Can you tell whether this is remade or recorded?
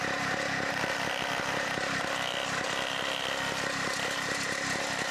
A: recorded